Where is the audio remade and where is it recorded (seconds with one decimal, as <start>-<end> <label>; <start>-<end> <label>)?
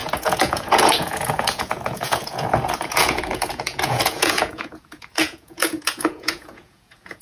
0.0-7.2 remade